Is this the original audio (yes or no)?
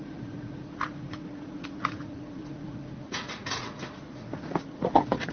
no